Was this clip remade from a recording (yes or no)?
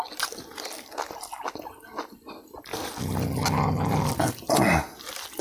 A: no